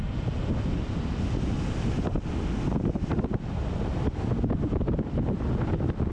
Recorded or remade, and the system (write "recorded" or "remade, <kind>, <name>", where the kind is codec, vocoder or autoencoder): recorded